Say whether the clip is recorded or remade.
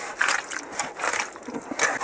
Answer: recorded